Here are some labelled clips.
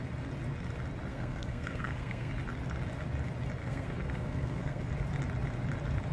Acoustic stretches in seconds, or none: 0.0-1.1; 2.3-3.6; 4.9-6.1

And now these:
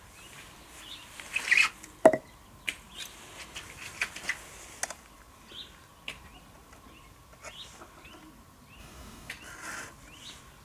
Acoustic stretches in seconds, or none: 0.0-8.8; 9.3-10.6

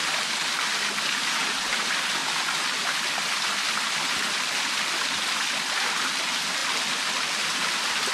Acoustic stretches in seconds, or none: 0.0-8.1

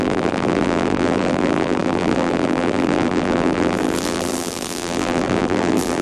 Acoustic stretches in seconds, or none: none

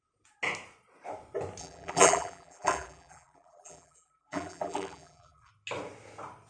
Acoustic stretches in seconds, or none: 0.0-1.6; 5.5-6.5

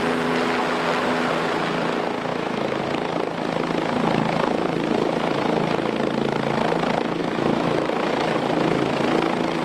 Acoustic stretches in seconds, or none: 0.0-2.3; 2.8-7.2; 8.1-9.6

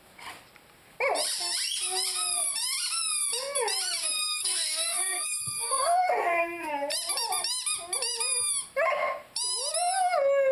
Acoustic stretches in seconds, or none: 0.0-4.2; 6.7-10.5